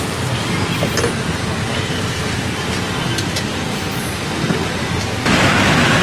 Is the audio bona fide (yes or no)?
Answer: yes